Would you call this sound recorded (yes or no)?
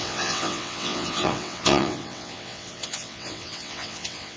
no